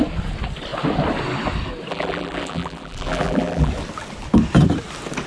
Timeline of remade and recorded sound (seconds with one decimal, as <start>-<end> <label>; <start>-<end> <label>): 0.0-1.9 recorded; 1.9-3.7 remade; 3.7-5.3 recorded